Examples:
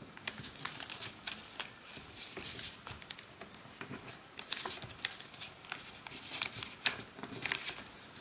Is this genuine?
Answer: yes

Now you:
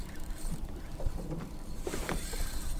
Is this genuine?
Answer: no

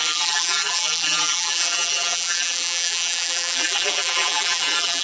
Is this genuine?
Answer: no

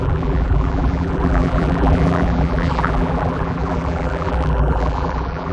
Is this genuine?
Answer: no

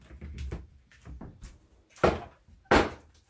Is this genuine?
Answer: yes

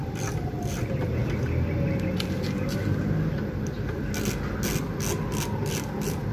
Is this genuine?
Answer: yes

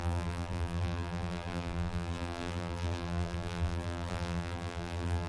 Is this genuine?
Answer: no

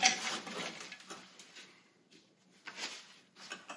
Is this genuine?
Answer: yes